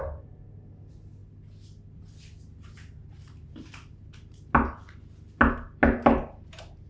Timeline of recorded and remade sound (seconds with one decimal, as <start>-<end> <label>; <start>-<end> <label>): 0.0-6.9 recorded